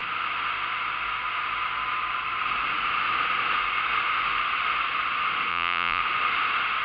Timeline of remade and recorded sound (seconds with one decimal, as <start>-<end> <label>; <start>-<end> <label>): 0.0-5.5 recorded; 5.5-6.0 remade; 6.0-6.8 recorded